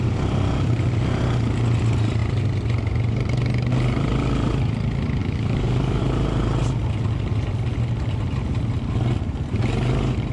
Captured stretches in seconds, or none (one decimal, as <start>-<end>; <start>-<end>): 0.0-5.2; 6.0-10.3